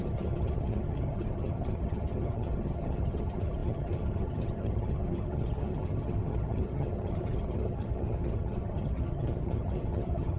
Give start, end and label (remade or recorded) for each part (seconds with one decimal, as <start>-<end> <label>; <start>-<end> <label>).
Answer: 0.0-10.4 remade